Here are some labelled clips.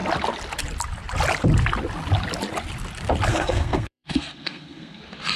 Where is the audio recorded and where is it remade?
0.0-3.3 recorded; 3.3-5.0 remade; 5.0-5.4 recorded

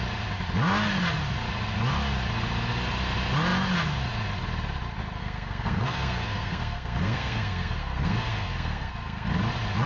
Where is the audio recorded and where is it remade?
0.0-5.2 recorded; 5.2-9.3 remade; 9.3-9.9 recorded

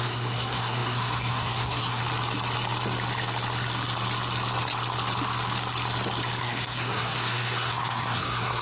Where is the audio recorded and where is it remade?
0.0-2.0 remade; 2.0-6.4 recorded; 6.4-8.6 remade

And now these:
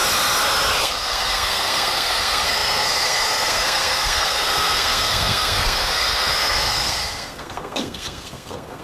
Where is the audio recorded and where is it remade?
0.0-0.8 recorded; 0.8-8.8 remade